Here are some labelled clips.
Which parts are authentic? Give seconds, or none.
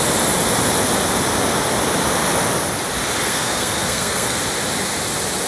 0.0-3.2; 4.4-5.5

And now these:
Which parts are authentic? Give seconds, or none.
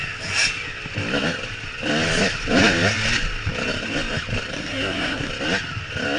0.0-4.5; 5.3-6.2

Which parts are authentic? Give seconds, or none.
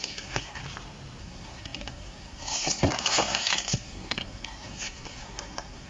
0.6-1.2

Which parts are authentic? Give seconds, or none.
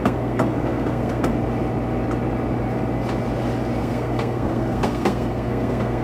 1.3-3.8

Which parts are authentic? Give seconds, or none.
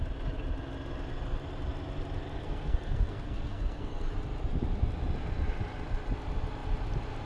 0.0-2.4; 4.1-7.3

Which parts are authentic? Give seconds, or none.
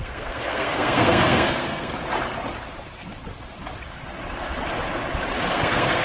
1.9-5.5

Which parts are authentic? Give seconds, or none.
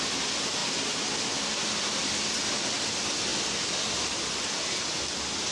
0.0-5.5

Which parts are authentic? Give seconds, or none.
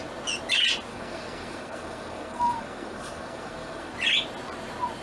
0.0-0.9; 3.9-5.0